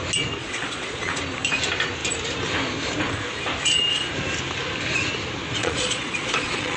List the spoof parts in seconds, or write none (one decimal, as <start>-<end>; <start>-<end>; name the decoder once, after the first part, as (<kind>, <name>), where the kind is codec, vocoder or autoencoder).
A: 0.4-1.2 (vocoder, Vocos); 5.6-6.8